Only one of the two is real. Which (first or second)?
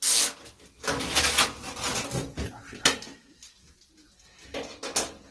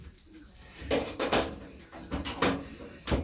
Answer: first